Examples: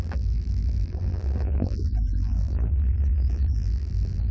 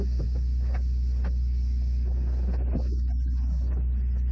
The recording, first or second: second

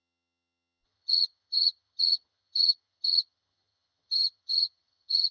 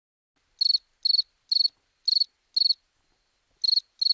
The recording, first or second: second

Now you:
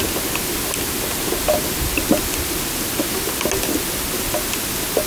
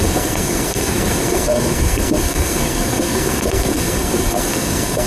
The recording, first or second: first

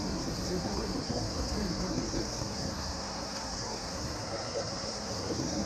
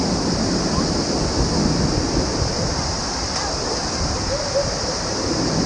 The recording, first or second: second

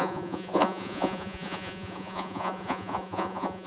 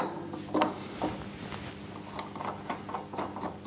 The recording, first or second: second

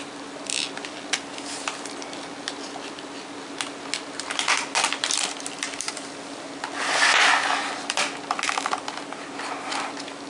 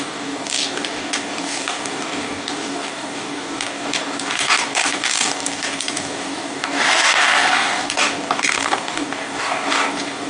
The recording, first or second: first